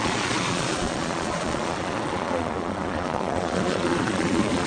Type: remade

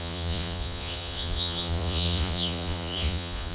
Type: remade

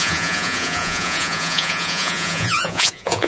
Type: remade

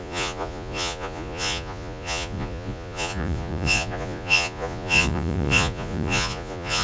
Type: remade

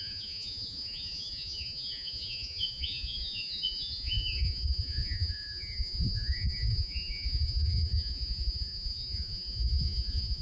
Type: remade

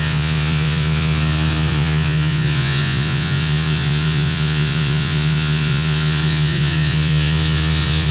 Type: remade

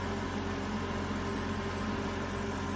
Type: recorded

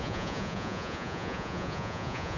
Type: remade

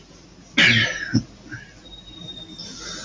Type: recorded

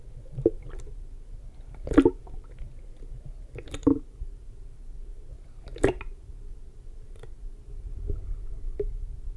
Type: recorded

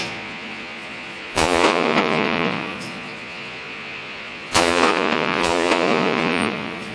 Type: remade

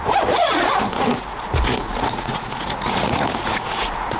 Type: remade